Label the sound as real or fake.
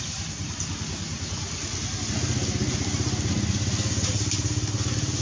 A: real